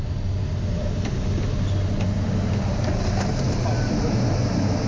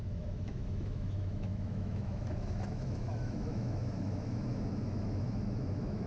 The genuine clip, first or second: first